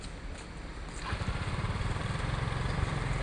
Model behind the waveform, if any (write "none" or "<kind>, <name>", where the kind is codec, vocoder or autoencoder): vocoder, BigVGAN v2